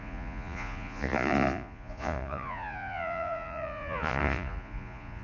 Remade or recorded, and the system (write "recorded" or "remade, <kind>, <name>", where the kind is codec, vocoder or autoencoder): remade, vocoder, Vocos